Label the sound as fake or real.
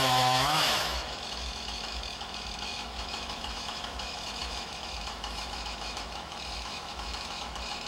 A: fake